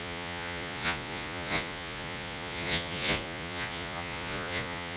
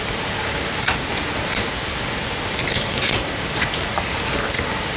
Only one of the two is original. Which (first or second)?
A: second